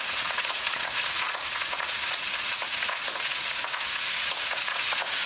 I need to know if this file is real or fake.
fake